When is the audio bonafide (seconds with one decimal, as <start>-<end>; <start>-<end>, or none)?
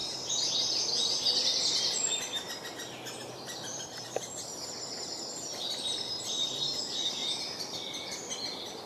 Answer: 0.0-3.7; 6.8-7.2; 8.1-8.9